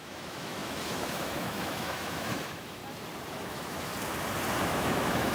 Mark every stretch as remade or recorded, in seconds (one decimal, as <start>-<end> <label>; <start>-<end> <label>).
0.0-2.8 remade; 2.8-3.3 recorded; 3.3-3.9 remade; 3.9-4.6 recorded; 4.6-5.3 remade